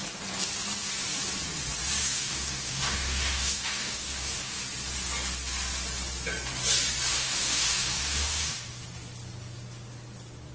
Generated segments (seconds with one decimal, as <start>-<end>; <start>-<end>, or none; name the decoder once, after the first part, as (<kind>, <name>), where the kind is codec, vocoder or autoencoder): 2.0-4.6 (codec, DAC); 7.1-8.8